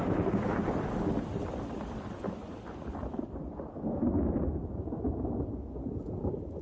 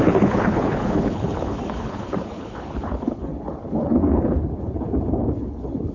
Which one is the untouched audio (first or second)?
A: first